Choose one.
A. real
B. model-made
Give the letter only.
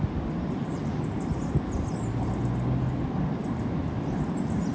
A